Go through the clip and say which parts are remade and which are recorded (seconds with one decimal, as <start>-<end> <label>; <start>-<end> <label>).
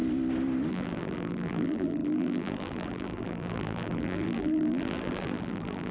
0.0-0.7 recorded; 0.7-5.9 remade